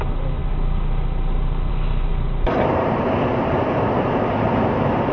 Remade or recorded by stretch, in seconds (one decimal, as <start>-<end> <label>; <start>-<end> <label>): 0.0-0.4 recorded; 0.4-1.7 remade; 1.7-2.1 recorded; 2.1-5.1 remade